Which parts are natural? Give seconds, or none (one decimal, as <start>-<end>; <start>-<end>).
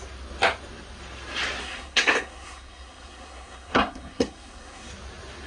0.0-1.6; 4.9-5.5